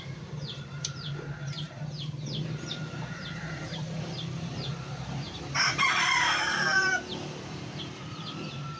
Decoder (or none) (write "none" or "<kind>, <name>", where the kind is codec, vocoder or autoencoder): vocoder, BigVGAN v2